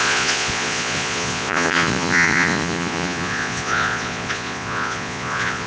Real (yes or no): no